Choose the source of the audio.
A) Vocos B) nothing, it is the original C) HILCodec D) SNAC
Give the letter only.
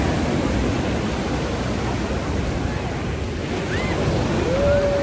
B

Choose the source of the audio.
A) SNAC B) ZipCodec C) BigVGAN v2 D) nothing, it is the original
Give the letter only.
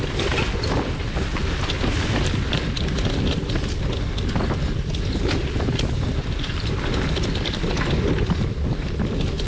D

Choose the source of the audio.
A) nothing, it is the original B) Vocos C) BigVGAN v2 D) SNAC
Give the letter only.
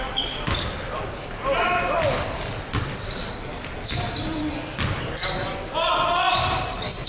A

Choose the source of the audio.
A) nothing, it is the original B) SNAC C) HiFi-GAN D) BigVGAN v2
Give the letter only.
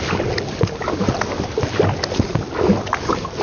A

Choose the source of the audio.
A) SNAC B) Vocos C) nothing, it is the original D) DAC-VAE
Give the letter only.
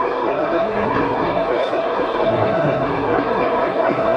A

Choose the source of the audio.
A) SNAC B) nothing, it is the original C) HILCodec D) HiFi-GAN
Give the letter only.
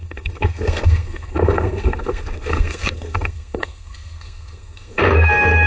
A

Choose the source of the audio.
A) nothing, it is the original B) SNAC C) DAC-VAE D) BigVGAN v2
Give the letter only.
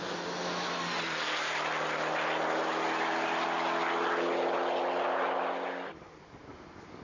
A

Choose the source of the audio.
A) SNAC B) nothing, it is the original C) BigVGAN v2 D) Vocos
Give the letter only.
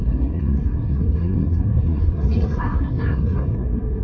A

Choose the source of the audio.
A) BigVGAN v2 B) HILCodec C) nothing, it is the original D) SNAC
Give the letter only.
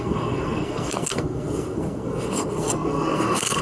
D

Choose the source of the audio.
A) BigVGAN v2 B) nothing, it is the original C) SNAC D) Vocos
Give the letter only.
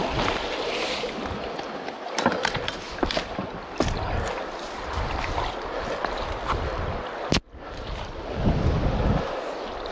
B